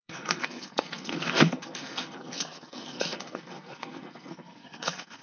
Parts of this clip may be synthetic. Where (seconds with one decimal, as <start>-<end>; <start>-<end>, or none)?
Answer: 0.0-5.2